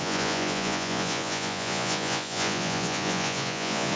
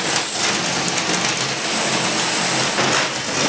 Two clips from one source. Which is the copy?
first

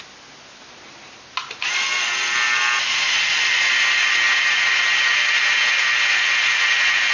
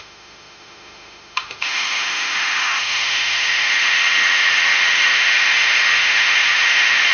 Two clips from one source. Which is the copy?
second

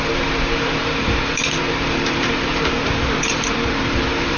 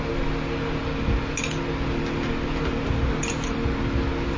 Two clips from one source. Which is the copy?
first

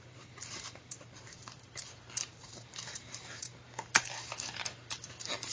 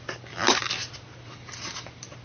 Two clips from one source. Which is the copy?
first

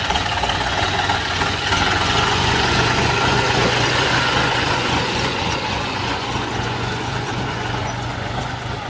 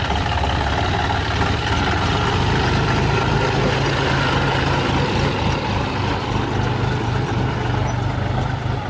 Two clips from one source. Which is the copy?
first